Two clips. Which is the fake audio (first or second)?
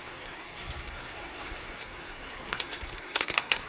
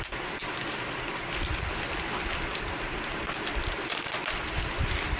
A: first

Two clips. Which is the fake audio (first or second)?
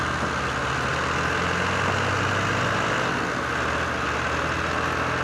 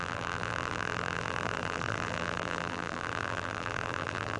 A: second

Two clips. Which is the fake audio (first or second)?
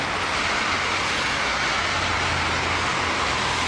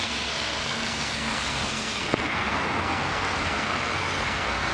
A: second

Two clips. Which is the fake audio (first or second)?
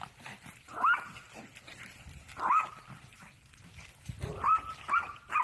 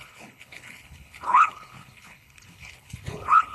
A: second